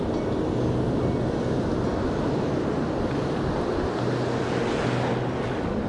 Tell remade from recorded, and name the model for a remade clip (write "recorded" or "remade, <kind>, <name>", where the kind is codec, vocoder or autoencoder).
recorded